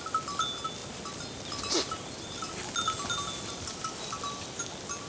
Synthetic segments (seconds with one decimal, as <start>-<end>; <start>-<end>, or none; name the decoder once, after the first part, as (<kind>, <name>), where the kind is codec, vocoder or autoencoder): none